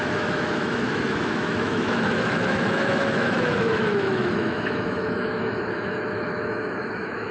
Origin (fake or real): fake